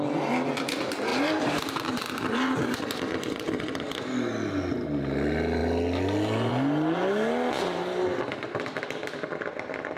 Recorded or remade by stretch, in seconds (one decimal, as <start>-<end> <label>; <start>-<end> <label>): 0.0-1.1 recorded; 1.1-2.8 remade; 2.8-10.0 recorded